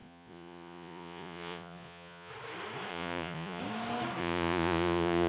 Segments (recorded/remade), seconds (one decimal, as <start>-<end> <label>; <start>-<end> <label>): 0.0-2.3 remade; 2.3-2.9 recorded; 2.9-3.6 remade; 3.6-4.2 recorded; 4.2-5.3 remade